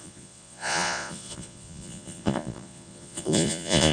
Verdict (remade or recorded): remade